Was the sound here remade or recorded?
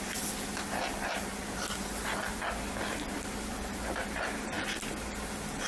recorded